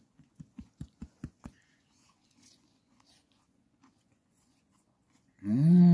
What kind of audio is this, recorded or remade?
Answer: remade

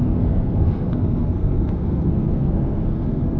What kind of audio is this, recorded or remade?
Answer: remade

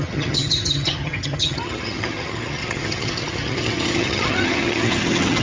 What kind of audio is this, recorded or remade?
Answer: remade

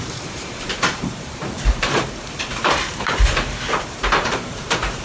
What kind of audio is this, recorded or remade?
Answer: remade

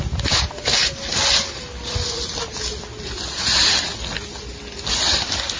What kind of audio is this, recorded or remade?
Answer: recorded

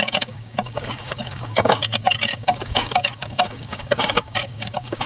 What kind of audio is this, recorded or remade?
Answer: remade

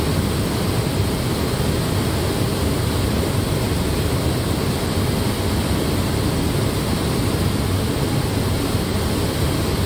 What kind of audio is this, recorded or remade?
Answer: recorded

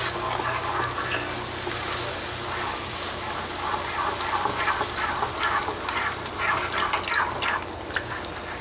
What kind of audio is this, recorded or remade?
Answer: recorded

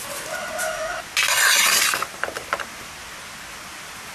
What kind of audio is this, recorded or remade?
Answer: recorded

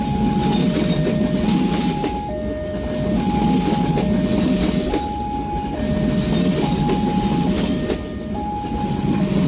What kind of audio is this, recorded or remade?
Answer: recorded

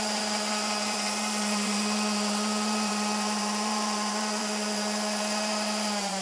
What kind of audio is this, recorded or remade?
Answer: remade